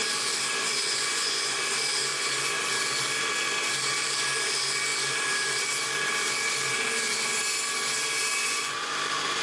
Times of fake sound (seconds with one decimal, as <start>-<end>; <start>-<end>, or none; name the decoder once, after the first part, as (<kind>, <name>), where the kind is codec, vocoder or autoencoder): 0.8-1.6 (vocoder, Vocos); 2.1-2.6; 8.4-8.9